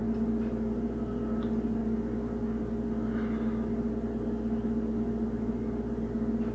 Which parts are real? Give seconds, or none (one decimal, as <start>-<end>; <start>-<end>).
0.0-6.5